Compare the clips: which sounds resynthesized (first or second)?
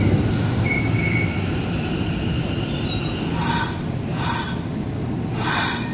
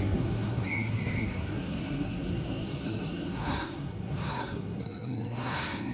second